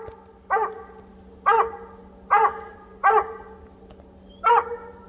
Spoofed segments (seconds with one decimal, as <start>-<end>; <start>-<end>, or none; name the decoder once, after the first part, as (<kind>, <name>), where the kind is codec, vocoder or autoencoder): none